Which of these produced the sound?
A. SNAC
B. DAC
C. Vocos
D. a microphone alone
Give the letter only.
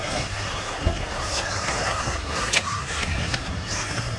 A